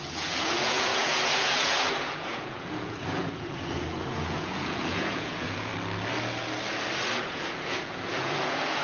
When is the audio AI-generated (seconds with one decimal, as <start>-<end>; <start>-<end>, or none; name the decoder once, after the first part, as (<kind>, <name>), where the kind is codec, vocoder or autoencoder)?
0.0-5.7 (vocoder, Vocos); 7.2-8.8